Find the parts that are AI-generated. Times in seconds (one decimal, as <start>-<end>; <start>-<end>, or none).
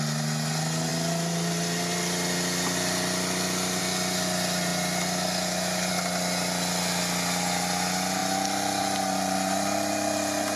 none